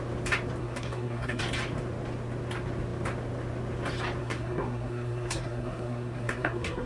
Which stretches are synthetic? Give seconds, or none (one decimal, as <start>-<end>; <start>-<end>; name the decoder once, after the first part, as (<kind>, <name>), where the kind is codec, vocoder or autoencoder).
0.6-1.4 (codec, SNAC); 4.2-6.9